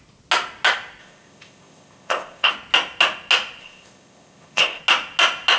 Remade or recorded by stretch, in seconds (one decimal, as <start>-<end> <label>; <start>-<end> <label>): 0.0-1.0 recorded; 1.0-2.5 remade; 2.5-3.6 recorded; 3.6-4.8 remade; 4.8-5.6 recorded